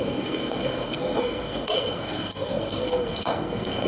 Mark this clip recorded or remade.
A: remade